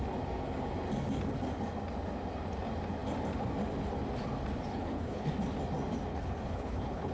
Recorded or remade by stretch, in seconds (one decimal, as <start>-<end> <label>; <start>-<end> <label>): 0.0-4.7 recorded; 4.7-5.3 remade; 5.3-6.1 recorded; 6.1-7.1 remade